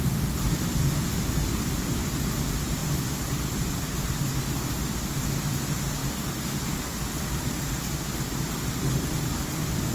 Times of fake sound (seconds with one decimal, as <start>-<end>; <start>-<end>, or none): none